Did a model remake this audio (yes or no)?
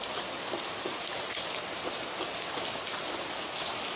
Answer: no